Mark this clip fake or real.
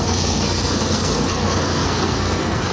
fake